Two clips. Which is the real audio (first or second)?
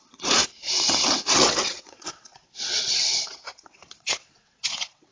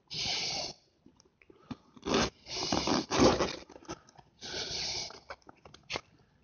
second